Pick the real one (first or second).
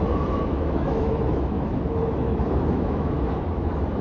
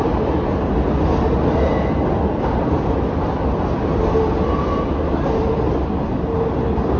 second